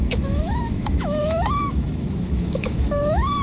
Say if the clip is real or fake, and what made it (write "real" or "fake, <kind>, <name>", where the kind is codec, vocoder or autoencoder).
fake, autoencoder, DAC-VAE